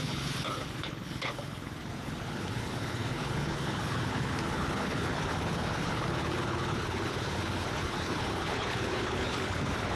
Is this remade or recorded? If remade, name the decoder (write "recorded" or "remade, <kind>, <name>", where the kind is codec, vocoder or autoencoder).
remade, codec, HILCodec